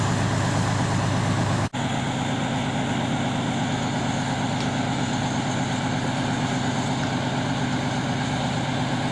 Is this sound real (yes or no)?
yes